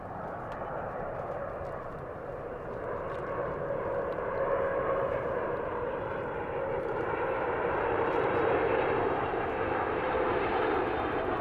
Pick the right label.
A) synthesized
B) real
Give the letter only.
A